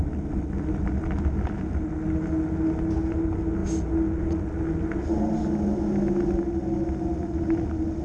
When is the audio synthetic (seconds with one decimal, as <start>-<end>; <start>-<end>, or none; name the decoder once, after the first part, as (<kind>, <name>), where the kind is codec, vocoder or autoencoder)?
none